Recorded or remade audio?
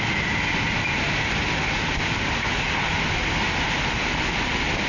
recorded